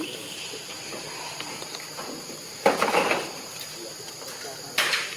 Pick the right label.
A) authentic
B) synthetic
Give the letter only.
B